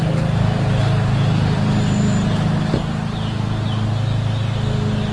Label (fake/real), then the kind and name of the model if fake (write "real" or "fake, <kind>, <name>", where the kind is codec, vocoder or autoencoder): real